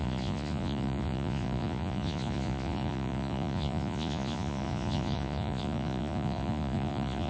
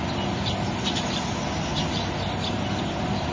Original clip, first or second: second